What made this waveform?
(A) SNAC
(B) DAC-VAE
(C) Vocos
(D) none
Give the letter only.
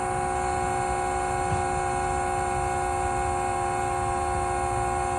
D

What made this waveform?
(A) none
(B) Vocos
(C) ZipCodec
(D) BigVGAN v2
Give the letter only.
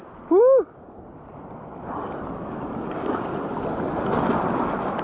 A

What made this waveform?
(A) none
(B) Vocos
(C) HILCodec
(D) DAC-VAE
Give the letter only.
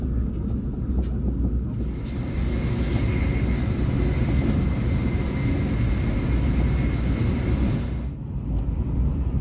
A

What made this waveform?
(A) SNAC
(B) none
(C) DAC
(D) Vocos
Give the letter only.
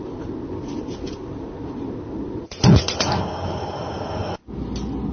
B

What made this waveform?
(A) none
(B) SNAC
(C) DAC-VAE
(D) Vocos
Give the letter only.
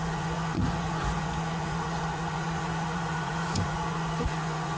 D